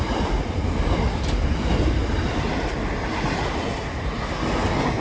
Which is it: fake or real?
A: real